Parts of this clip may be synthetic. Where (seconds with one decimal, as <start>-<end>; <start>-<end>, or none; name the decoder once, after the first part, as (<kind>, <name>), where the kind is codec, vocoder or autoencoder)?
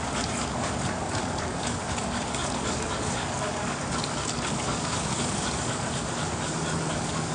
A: 0.0-7.3 (codec, DAC)